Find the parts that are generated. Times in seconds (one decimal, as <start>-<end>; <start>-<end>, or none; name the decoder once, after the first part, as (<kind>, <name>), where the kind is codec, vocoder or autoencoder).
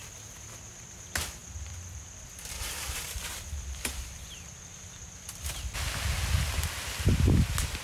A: 1.4-5.5 (vocoder, BigVGAN v2)